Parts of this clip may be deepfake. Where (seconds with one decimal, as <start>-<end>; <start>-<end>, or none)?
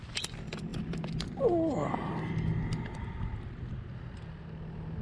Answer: none